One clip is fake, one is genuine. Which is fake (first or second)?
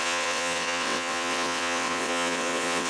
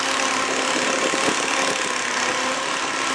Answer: first